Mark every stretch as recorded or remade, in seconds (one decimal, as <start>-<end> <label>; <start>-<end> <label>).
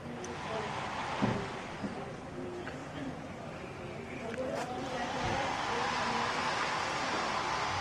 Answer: 0.0-1.5 remade; 1.5-5.0 recorded; 5.0-6.4 remade; 6.4-7.8 recorded